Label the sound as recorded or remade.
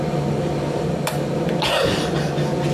recorded